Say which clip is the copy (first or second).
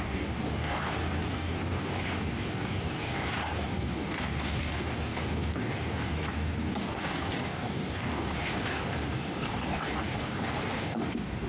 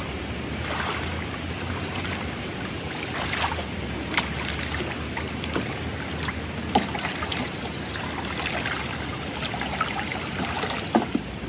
first